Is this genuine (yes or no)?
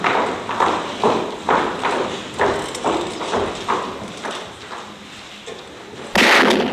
yes